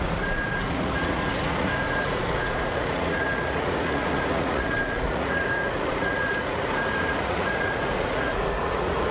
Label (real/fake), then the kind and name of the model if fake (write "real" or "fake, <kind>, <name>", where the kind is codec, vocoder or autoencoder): fake, vocoder, Vocos